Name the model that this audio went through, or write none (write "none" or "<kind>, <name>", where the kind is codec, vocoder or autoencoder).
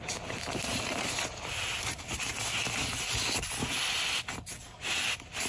none